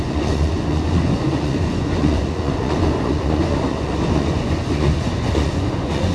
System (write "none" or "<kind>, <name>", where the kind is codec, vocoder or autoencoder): vocoder, Vocos